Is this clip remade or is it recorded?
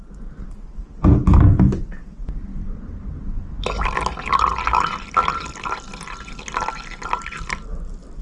recorded